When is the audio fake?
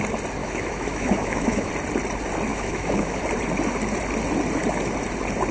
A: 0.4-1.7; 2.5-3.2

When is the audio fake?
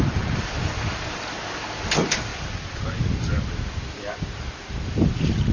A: none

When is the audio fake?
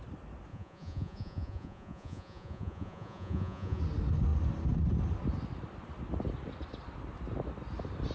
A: 0.5-3.8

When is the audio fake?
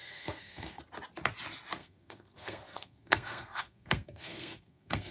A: 0.0-0.8; 1.8-5.1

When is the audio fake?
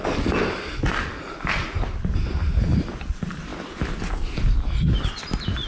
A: none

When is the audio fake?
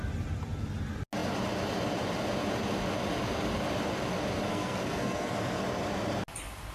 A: 4.5-5.6